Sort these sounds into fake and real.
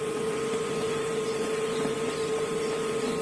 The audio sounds fake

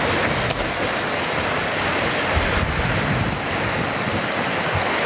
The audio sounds real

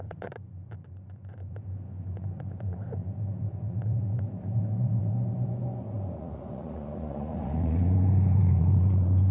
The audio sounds fake